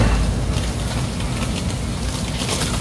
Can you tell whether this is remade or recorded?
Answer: recorded